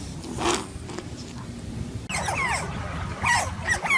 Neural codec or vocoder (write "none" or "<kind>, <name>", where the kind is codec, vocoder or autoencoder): none